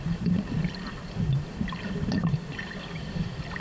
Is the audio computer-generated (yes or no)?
no